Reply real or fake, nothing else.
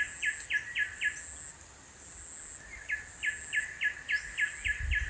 real